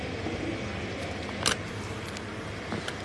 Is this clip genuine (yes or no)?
yes